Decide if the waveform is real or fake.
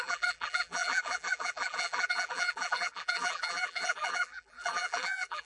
fake